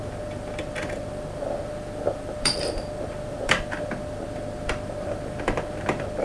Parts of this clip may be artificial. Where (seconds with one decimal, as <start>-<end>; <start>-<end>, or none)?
0.0-6.2